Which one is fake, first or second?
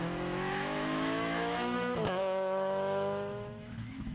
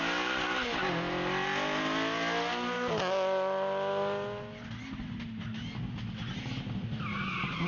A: first